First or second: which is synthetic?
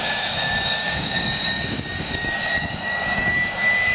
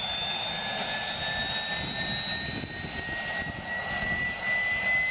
first